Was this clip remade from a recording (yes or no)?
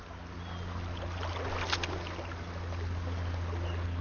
no